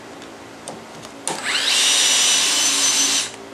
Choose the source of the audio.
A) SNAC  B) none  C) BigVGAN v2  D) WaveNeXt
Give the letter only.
B